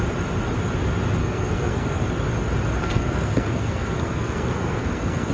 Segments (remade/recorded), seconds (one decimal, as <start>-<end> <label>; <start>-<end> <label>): 0.0-1.2 recorded; 1.2-2.0 remade; 2.0-2.8 recorded; 2.8-5.3 remade